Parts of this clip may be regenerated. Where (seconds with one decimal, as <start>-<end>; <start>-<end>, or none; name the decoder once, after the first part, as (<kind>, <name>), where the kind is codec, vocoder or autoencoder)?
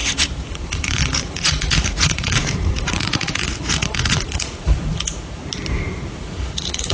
0.0-5.4 (vocoder, Vocos); 6.2-6.9